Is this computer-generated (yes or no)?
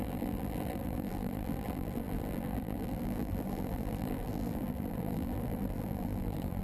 yes